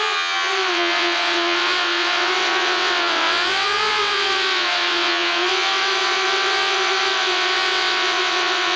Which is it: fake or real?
fake